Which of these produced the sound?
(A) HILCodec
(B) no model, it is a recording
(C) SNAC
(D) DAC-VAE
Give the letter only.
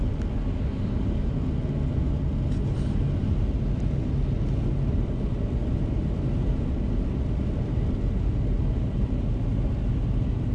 B